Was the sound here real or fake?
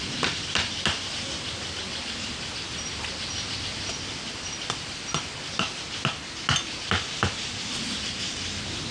real